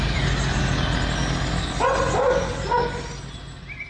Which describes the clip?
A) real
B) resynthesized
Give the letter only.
A